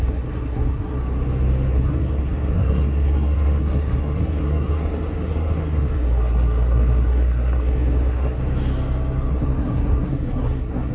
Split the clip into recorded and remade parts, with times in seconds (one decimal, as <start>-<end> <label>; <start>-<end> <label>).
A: 0.0-1.0 remade; 1.0-1.7 recorded; 1.7-8.4 remade; 8.4-9.3 recorded; 9.3-10.9 remade